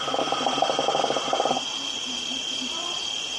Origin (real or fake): real